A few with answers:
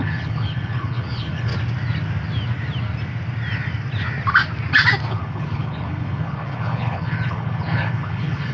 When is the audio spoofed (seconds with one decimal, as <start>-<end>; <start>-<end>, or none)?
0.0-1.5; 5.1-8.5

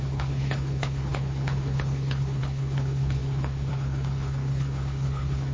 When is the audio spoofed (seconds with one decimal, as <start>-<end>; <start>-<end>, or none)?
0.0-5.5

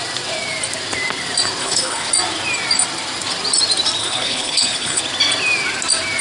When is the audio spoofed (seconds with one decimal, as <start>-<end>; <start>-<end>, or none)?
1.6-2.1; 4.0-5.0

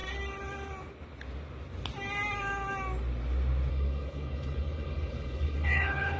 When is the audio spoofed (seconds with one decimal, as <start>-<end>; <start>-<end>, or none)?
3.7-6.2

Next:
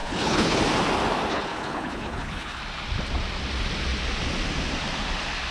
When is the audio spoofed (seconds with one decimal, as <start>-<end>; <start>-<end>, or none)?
0.0-0.6; 1.3-2.6

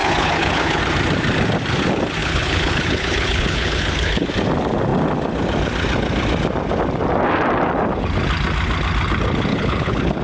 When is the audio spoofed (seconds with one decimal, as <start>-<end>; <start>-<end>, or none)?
0.0-0.8; 2.2-4.3; 9.5-10.2

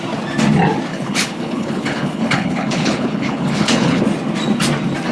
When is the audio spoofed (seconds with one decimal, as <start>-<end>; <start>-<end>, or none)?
0.9-4.0